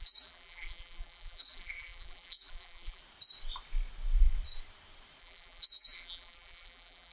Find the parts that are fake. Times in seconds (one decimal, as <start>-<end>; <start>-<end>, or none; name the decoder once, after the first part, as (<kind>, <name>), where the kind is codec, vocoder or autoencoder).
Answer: 0.0-3.0 (vocoder, BigVGAN v2); 5.2-7.1